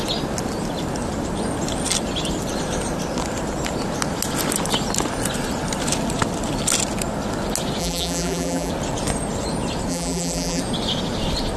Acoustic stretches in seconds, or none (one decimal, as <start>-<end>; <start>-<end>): 0.0-7.8; 8.7-9.9; 10.6-11.6